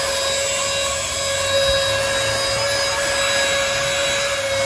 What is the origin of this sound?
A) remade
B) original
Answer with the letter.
B